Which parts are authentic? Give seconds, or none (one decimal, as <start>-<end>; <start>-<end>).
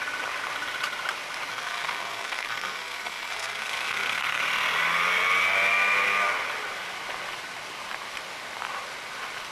0.0-1.5; 4.4-9.5